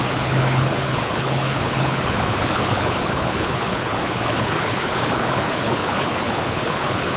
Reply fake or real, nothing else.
fake